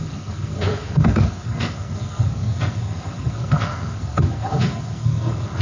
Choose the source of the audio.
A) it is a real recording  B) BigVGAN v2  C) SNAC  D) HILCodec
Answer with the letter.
C